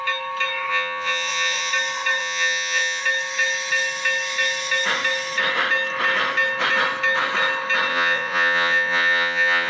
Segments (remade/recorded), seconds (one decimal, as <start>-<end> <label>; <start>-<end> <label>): 0.0-0.7 recorded; 0.7-1.7 remade; 1.7-2.2 recorded; 2.2-3.0 remade; 3.0-7.9 recorded; 7.9-9.7 remade